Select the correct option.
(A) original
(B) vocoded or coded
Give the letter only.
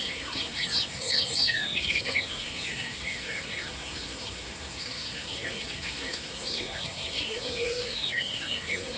B